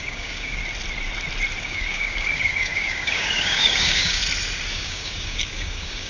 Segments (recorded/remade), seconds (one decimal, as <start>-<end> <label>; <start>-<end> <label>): 0.0-0.6 remade; 0.6-1.6 recorded; 1.6-4.2 remade; 4.2-4.7 recorded; 4.7-6.1 remade